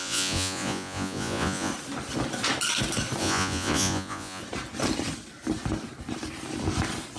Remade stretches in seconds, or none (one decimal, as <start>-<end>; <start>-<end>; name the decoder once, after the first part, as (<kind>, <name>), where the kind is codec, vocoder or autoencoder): 0.0-1.7 (vocoder, Vocos); 3.2-4.4